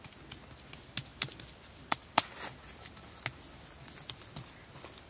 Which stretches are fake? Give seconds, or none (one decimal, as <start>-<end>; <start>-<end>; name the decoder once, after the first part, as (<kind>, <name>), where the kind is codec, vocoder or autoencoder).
1.1-2.3 (vocoder, BigVGAN v2)